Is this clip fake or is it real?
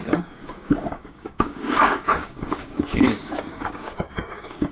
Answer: fake